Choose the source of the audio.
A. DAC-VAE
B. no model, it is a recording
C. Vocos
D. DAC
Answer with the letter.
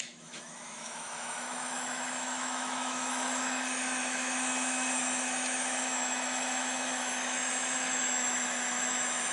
A